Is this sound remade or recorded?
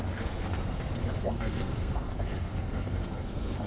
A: remade